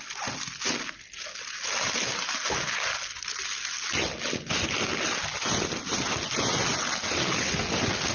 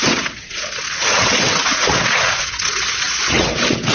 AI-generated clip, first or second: second